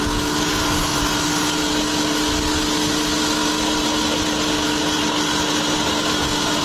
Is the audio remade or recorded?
recorded